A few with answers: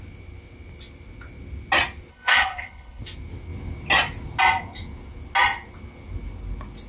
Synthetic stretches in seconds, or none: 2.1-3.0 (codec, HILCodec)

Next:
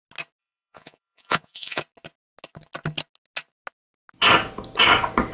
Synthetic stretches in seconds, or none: 0.4-1.8 (vocoder, Vocos)